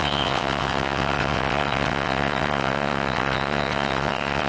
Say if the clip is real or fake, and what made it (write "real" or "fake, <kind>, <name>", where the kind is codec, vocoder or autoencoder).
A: fake, vocoder, WaveNeXt